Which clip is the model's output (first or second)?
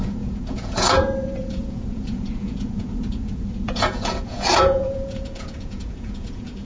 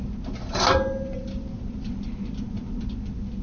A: first